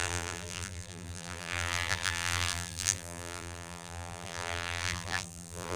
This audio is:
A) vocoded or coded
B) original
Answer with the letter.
A